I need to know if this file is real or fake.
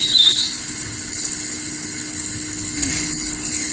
fake